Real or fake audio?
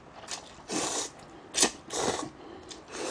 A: real